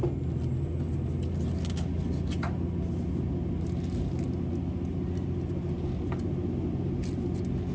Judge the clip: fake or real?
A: real